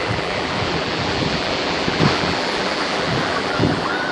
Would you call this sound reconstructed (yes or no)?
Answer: yes